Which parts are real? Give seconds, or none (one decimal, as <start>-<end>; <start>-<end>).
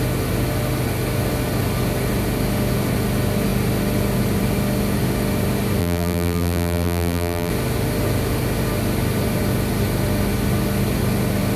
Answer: 0.0-5.8; 7.5-11.6